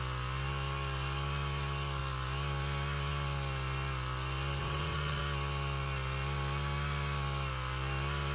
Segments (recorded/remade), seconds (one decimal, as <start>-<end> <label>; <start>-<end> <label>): 0.0-4.6 recorded; 4.6-5.2 remade; 5.2-8.3 recorded